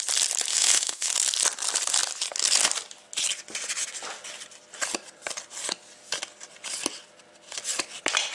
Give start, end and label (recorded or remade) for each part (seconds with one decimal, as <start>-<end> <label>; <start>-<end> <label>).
0.0-0.5 recorded; 0.5-1.1 remade; 1.1-8.3 recorded